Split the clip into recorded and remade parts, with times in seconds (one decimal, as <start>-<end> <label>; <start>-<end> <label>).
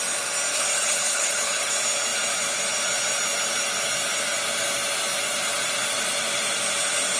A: 0.0-0.5 recorded; 0.5-1.7 remade; 1.7-7.2 recorded